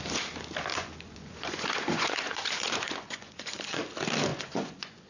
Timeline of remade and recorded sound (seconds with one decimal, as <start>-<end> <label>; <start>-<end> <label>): 0.0-0.7 recorded; 0.7-3.8 remade; 3.8-4.3 recorded; 4.3-5.1 remade